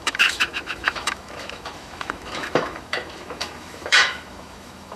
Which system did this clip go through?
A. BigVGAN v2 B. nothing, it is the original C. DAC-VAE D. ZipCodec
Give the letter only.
C